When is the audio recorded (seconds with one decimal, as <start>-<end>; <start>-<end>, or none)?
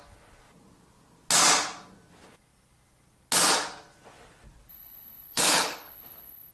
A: 0.0-4.7